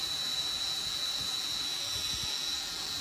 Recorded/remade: remade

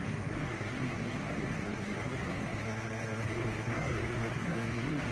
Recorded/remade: remade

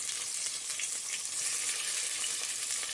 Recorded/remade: recorded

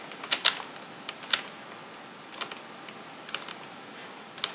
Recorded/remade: recorded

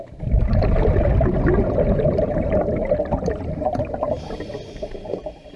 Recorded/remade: remade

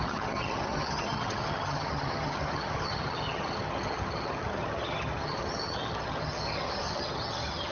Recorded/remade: remade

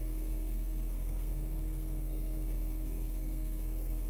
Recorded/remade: remade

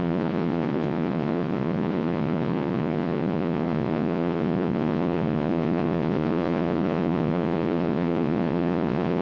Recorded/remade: remade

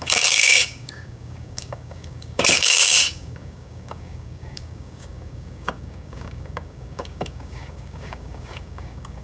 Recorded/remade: remade